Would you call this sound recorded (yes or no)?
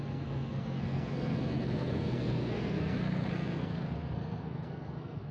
no